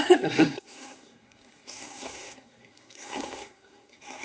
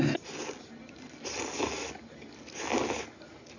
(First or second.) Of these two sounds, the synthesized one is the first